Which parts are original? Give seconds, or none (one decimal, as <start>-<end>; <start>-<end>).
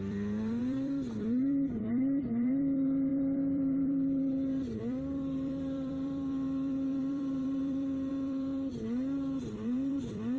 8.7-9.4